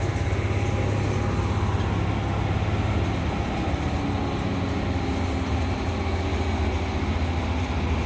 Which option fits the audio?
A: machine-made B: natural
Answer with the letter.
B